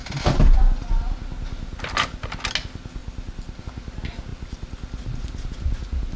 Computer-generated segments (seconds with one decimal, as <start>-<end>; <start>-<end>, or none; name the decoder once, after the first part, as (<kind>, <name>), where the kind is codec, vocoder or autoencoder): 0.0-0.9 (vocoder, BigVGAN v2); 3.0-3.6; 4.3-5.5

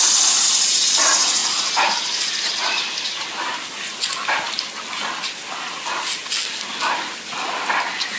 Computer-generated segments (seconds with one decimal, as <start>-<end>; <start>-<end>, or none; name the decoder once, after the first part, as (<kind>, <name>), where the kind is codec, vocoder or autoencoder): none

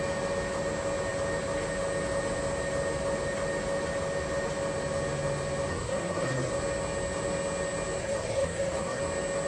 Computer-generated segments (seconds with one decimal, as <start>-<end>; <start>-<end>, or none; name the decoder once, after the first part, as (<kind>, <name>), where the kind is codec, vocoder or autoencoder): 5.7-6.5 (codec, SNAC); 8.0-9.0

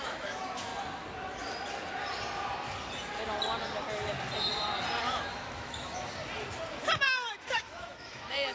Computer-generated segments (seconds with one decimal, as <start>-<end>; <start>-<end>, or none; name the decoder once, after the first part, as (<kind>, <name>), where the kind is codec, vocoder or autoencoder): 0.0-0.7 (autoencoder, DAC-VAE); 5.0-6.0; 7.3-8.5